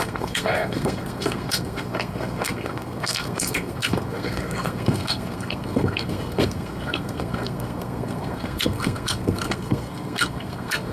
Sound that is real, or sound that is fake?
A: fake